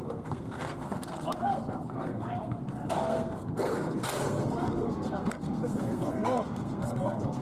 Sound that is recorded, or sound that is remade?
remade